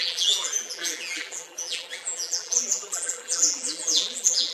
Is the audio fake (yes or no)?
yes